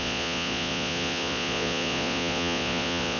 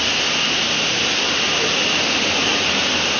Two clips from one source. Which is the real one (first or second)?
second